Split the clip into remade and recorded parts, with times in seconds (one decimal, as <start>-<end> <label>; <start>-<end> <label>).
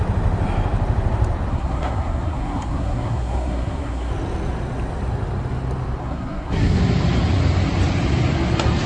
0.0-1.5 recorded; 1.5-4.1 remade; 4.1-6.0 recorded; 6.0-6.8 remade; 6.8-8.9 recorded